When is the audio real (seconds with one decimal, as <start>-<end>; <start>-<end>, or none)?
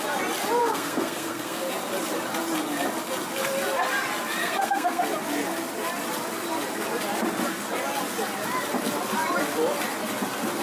0.0-0.6; 1.7-4.4; 5.0-10.6